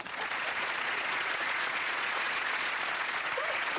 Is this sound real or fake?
fake